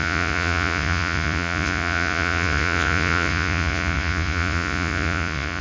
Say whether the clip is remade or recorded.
remade